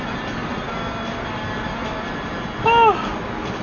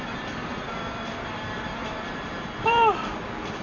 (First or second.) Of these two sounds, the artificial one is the second